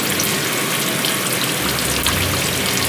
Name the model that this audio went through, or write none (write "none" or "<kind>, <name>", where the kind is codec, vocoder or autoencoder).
none